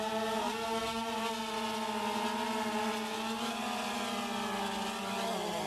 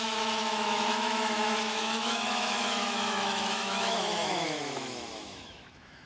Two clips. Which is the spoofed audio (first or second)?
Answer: second